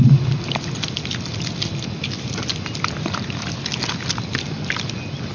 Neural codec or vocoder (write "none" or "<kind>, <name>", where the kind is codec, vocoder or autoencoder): none